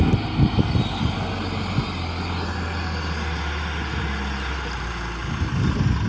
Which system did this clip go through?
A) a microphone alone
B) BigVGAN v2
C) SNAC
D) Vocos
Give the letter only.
A